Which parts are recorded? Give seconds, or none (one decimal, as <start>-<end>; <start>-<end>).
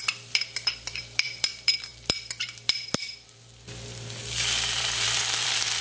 none